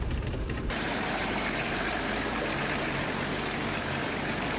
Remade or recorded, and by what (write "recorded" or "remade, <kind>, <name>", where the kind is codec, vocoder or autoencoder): remade, vocoder, BigVGAN v2